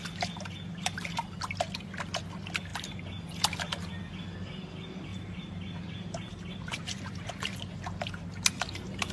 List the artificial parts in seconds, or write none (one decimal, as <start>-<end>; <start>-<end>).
5.1-7.3